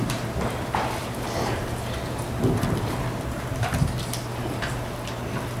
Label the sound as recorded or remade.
recorded